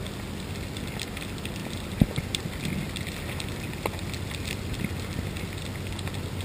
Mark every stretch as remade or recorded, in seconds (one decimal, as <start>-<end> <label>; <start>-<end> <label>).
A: 0.0-6.4 recorded